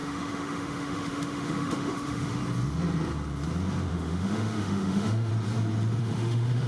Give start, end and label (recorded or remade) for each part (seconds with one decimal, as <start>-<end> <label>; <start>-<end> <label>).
0.0-2.4 remade; 2.4-3.9 recorded; 3.9-5.3 remade; 5.3-6.0 recorded; 6.0-6.7 remade